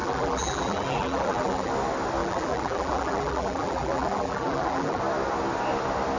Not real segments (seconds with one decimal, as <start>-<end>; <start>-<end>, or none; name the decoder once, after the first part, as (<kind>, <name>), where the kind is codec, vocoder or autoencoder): 0.0-1.7 (vocoder, BigVGAN v2); 2.2-5.0